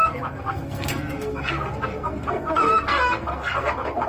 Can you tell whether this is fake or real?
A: fake